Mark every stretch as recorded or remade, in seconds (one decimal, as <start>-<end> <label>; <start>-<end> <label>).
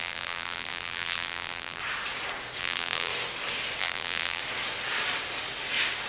0.0-1.8 remade; 1.8-2.6 recorded; 2.6-3.1 remade; 3.1-3.8 recorded; 3.8-4.4 remade; 4.4-6.1 recorded